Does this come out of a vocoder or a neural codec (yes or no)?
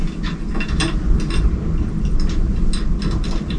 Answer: no